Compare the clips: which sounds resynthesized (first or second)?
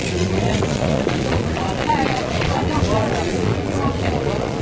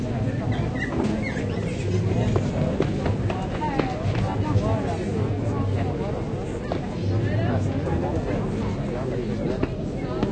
first